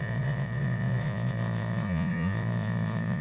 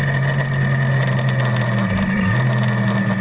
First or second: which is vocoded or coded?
first